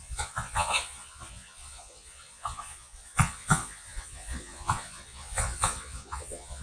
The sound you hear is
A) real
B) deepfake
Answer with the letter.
B